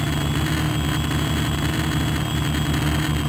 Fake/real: real